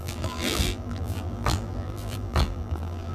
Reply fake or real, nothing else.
fake